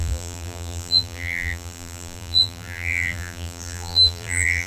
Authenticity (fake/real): fake